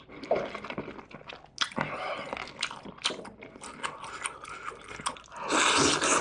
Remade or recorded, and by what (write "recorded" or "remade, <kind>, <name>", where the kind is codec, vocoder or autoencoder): recorded